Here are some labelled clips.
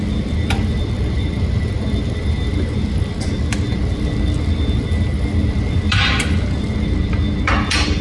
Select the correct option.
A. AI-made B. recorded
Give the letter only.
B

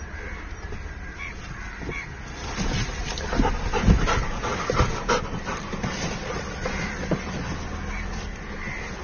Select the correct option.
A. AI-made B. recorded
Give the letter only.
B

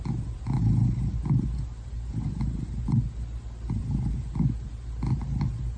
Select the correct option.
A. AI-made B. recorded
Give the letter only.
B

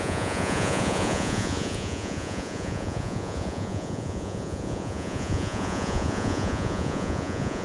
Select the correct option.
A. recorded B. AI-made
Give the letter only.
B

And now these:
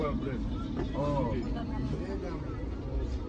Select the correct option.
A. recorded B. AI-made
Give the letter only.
A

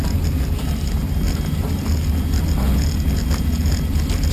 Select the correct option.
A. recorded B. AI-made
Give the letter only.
A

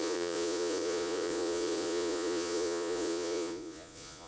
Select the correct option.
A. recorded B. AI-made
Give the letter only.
B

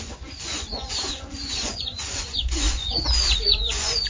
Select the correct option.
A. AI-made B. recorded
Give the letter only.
A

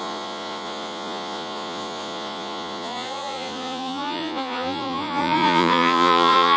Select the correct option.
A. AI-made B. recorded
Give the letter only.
A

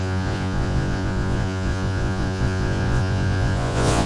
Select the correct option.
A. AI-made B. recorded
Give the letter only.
A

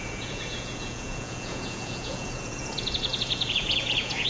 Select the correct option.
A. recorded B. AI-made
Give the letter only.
B